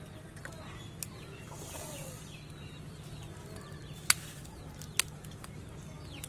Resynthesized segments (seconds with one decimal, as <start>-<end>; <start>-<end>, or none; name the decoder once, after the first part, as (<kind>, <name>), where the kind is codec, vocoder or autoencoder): none